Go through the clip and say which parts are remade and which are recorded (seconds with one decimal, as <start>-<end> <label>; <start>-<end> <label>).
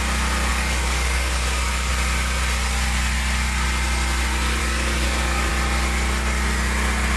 0.0-0.5 recorded; 0.5-1.9 remade; 1.9-4.6 recorded; 4.6-5.5 remade; 5.5-7.2 recorded